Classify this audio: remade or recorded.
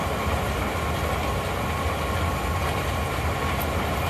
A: recorded